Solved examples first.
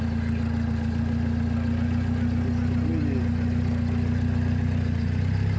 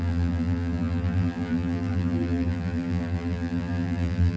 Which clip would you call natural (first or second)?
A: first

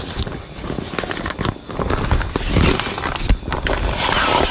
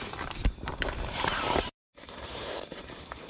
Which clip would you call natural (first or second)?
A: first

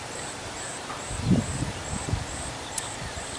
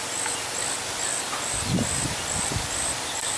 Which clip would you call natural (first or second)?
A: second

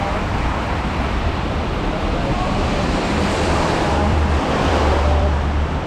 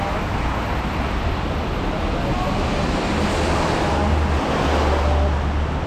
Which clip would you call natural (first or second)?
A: second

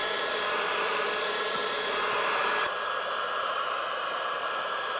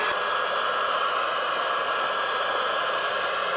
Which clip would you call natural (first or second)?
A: second